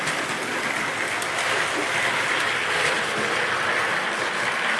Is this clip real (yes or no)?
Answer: yes